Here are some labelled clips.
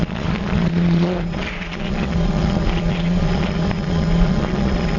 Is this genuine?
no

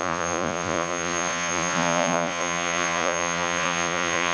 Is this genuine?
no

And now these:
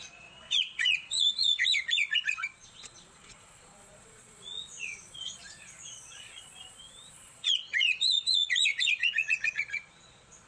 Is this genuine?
no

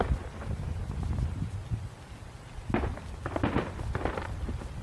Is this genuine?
yes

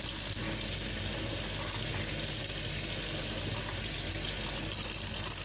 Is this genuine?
yes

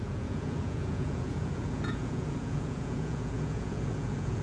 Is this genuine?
no